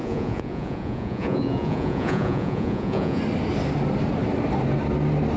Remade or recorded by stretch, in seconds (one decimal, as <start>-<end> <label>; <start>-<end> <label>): 0.0-3.2 remade; 3.2-5.4 recorded